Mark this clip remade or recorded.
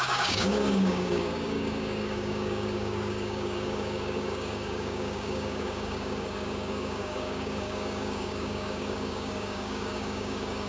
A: remade